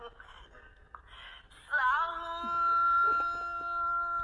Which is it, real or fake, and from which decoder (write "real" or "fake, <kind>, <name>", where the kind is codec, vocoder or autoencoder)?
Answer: real